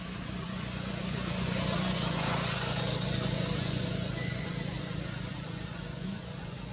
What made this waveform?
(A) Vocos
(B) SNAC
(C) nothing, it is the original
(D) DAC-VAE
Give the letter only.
A